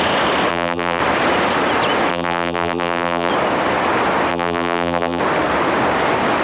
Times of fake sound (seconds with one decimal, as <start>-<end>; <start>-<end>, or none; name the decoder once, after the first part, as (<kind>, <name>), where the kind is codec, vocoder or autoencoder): 0.5-1.0 (vocoder, BigVGAN v2); 2.1-3.3; 4.3-5.2